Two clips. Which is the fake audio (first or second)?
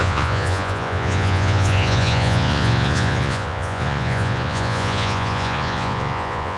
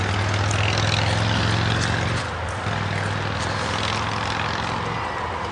first